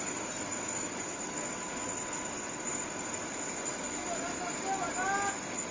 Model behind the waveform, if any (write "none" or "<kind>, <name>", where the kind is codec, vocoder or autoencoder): none